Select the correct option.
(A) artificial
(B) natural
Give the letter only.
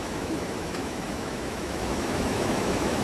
A